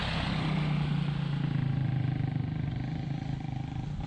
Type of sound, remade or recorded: recorded